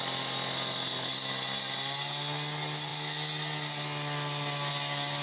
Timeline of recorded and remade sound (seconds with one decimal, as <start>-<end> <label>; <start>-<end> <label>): 0.0-5.2 recorded